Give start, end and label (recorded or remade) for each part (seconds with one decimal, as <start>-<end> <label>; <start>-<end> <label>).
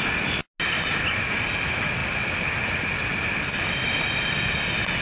0.0-5.0 recorded